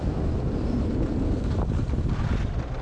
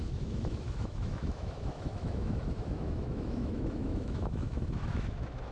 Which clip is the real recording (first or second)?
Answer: first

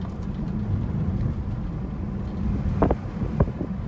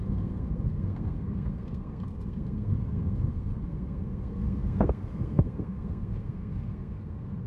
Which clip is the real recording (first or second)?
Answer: first